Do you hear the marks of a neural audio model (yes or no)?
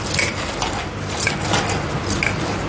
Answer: no